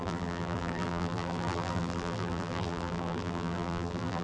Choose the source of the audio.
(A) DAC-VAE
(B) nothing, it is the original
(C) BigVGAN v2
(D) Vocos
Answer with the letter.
C